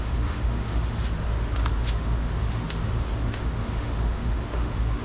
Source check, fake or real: fake